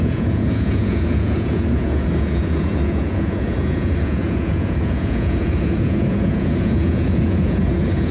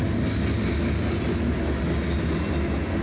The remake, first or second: first